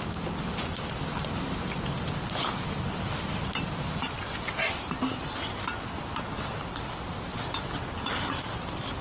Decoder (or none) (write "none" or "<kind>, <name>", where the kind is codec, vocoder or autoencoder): none